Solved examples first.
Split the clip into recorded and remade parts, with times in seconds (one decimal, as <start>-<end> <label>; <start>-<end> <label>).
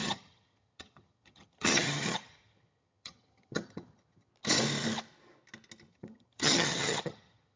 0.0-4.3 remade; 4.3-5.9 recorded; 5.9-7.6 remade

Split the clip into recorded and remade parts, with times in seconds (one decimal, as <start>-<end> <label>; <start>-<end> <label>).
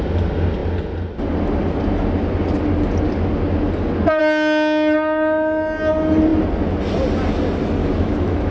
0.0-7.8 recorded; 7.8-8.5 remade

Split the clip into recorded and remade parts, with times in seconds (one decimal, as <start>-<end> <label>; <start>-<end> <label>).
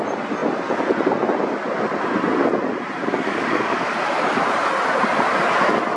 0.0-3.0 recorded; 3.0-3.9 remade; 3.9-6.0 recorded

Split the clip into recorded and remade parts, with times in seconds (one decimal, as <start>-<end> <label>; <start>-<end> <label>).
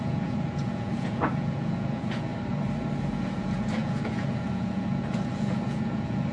0.0-2.3 remade; 2.3-3.0 recorded; 3.0-6.3 remade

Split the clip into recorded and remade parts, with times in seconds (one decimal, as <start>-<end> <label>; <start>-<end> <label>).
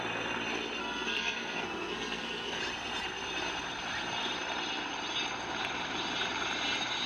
0.0-0.8 recorded; 0.8-2.6 remade; 2.6-7.1 recorded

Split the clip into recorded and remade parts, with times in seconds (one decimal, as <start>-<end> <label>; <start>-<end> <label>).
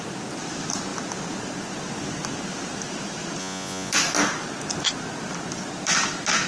0.0-3.4 recorded; 3.4-3.9 remade; 3.9-6.5 recorded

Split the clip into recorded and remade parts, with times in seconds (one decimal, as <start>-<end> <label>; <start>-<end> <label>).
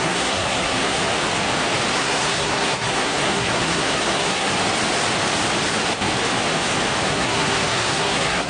0.0-1.0 remade; 1.0-1.9 recorded; 1.9-4.5 remade; 4.5-7.1 recorded; 7.1-8.5 remade